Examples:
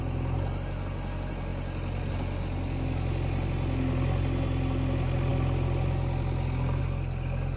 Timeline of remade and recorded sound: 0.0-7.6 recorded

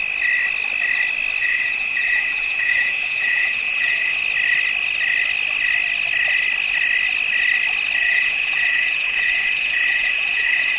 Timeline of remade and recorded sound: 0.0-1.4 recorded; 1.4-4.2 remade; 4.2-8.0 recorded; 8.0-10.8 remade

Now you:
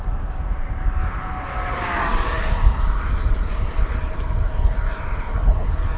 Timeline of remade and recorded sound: 0.0-6.0 recorded

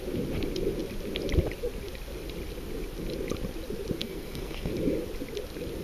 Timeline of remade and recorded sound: 0.0-4.0 recorded; 4.0-4.7 remade; 4.7-5.8 recorded

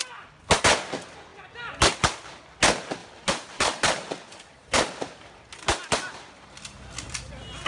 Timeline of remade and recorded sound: 0.0-3.0 recorded; 3.0-7.3 remade; 7.3-7.7 recorded

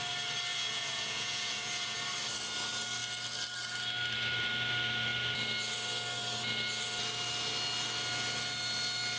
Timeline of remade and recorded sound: 0.0-0.5 recorded; 0.5-2.0 remade; 2.0-9.2 recorded